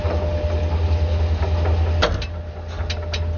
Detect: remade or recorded recorded